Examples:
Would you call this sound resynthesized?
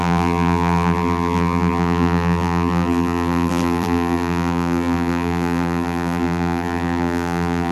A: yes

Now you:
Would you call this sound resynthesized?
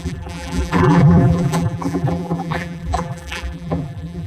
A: yes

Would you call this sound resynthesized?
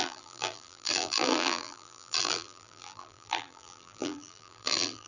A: yes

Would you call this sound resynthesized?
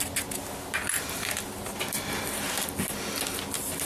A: no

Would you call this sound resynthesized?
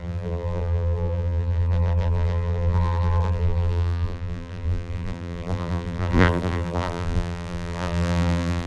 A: yes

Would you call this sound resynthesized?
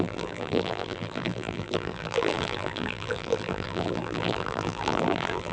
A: yes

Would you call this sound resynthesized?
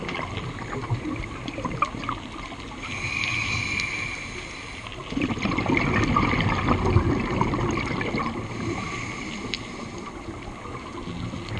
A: no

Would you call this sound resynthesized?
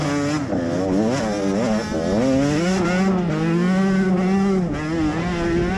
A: no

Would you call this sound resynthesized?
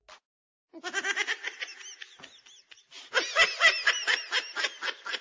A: no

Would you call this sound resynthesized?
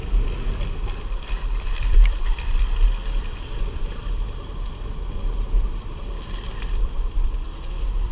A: yes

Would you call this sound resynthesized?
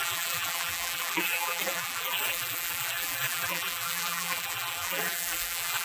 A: yes